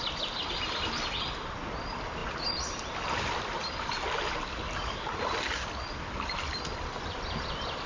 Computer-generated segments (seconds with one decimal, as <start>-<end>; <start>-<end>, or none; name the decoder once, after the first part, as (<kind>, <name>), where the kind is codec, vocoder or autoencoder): none